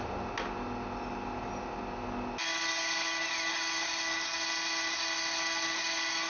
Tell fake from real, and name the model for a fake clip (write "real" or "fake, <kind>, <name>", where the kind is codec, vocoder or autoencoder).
real